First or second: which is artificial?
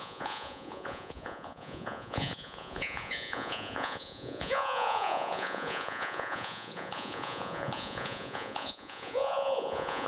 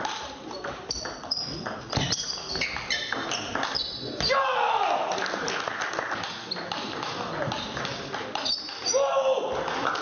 first